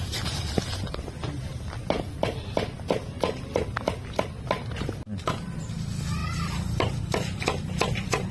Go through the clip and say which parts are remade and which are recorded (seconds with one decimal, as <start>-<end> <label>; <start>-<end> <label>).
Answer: 0.0-6.2 recorded; 6.2-8.3 remade

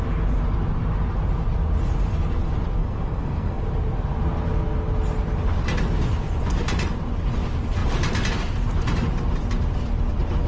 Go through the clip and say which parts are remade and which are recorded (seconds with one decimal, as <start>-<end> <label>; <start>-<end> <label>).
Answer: 0.0-2.8 recorded; 2.8-3.6 remade; 3.6-10.5 recorded

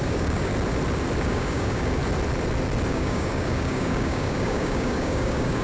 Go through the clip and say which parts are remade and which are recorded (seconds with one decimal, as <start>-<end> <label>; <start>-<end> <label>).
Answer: 0.0-0.5 remade; 0.5-1.2 recorded; 1.2-2.0 remade; 2.0-2.9 recorded; 2.9-5.6 remade

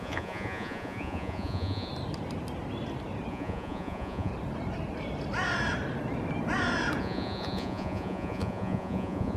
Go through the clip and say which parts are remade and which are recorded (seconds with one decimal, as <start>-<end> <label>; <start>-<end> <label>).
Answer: 0.0-1.9 remade; 1.9-3.3 recorded; 3.3-4.3 remade; 4.3-7.0 recorded; 7.0-9.4 remade

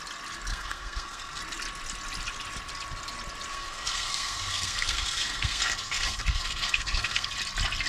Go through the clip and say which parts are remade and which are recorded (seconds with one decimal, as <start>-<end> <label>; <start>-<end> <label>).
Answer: 0.0-0.5 recorded; 0.5-1.4 remade; 1.4-3.5 recorded; 3.5-7.3 remade; 7.3-7.9 recorded

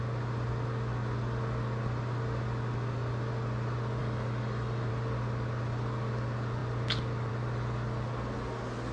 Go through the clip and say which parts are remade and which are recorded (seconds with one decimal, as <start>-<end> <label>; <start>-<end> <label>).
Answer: 0.0-4.0 recorded; 4.0-4.9 remade; 4.9-8.9 recorded

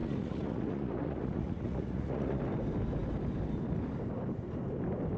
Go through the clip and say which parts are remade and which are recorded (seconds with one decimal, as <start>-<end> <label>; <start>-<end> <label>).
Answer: 0.0-2.4 remade; 2.4-5.2 recorded

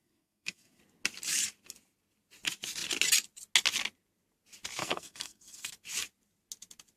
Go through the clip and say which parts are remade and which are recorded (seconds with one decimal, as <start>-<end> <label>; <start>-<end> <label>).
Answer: 0.0-0.8 remade; 0.8-4.8 recorded; 4.8-5.7 remade; 5.7-7.0 recorded